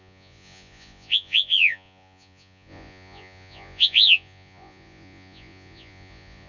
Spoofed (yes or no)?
yes